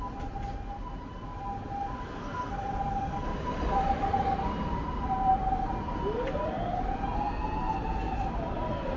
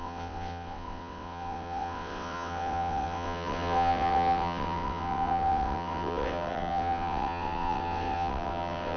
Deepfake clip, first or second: second